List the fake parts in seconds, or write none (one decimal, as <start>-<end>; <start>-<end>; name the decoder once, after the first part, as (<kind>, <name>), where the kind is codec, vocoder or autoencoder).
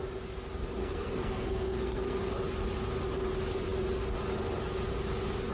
0.8-2.4 (codec, SNAC)